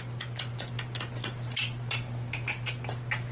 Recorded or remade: recorded